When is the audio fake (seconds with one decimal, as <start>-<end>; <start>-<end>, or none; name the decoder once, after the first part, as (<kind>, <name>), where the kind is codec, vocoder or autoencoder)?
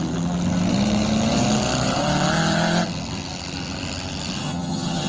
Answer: 4.4-5.1 (vocoder, HiFi-GAN)